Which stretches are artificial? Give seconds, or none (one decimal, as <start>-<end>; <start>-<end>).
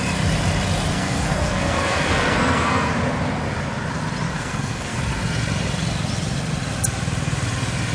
0.9-2.9; 4.3-5.0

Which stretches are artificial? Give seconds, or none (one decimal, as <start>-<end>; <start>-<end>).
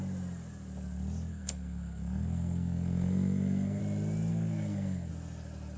1.3-3.8; 4.3-5.1